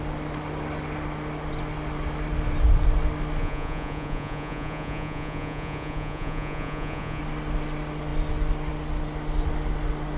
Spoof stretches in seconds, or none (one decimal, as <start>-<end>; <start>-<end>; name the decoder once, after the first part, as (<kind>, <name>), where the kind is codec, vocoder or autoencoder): 3.4-7.2 (vocoder, Vocos)